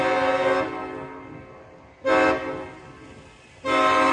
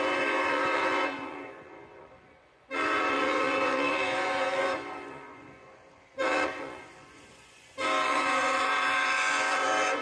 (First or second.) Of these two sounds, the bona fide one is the first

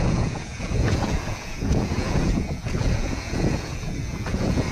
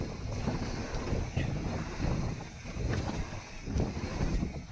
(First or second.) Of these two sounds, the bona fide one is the second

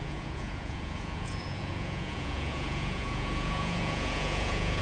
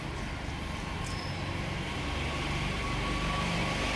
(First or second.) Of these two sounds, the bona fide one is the second